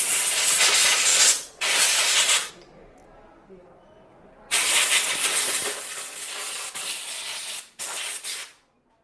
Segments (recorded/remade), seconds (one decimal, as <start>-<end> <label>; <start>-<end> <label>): 0.0-1.1 recorded; 1.1-2.5 remade; 2.5-9.0 recorded